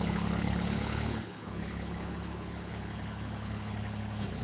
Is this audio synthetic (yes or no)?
yes